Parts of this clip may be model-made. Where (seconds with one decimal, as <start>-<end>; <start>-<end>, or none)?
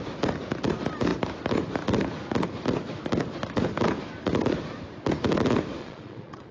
5.8-6.5